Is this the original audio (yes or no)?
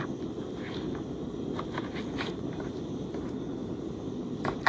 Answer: yes